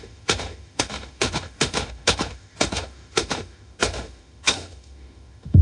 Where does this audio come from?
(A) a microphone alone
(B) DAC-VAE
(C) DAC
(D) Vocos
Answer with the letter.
B